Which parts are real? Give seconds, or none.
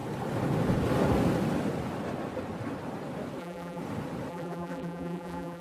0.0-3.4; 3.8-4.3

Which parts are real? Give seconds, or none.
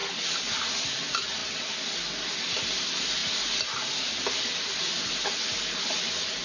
0.0-0.8; 1.4-2.4; 3.2-5.8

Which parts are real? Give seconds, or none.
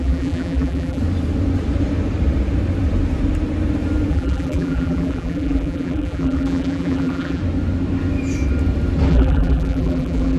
1.0-4.1; 7.4-9.1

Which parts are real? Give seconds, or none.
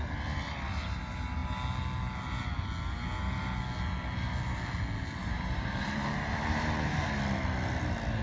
0.0-5.2; 7.0-8.2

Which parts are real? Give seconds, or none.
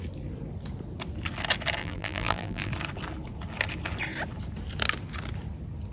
0.0-1.8; 2.7-5.9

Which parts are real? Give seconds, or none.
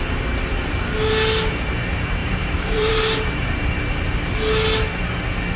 0.0-2.2; 3.6-5.6